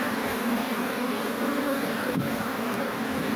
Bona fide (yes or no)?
no